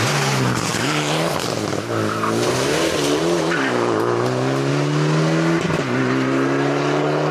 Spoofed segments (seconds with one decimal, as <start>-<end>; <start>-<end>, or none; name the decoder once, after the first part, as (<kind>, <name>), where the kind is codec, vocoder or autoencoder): none